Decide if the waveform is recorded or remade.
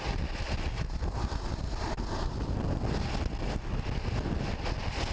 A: recorded